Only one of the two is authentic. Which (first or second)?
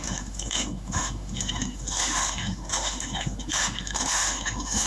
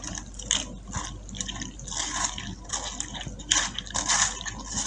second